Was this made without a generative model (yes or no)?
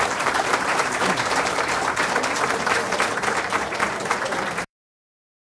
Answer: no